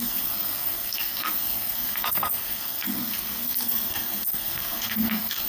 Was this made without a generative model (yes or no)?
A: no